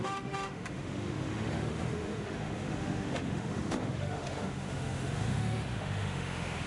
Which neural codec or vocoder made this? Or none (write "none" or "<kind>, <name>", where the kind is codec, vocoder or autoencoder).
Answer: autoencoder, DAC-VAE